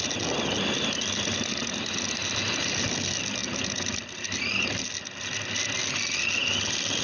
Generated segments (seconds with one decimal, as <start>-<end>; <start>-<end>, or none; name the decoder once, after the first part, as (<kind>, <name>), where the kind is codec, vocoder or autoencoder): none